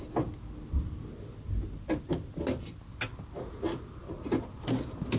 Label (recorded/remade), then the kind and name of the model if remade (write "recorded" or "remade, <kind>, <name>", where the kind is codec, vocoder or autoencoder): recorded